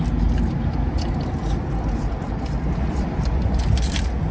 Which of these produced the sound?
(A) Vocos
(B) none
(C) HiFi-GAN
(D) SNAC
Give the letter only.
B